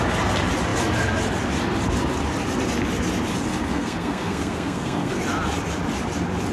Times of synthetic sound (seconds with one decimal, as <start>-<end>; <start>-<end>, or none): 3.5-5.2